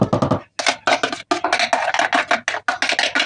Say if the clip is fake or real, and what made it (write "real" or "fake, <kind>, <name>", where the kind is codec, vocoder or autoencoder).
real